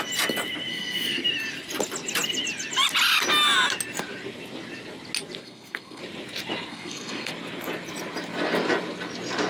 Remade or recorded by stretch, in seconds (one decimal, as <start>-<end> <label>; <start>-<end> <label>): 0.0-0.7 recorded; 0.7-1.2 remade; 1.2-5.4 recorded; 5.4-6.0 remade; 6.0-6.7 recorded; 6.7-7.3 remade; 7.3-9.5 recorded